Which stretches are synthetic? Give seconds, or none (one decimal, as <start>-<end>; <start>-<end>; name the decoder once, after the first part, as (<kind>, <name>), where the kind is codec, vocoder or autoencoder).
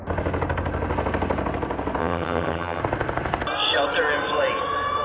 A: 2.0-2.8 (vocoder, HiFi-GAN)